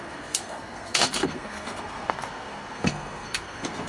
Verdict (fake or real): fake